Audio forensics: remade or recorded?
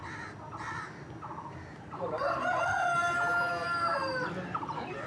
recorded